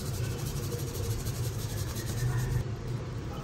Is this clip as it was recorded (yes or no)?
no